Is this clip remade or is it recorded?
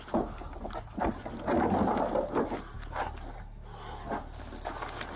recorded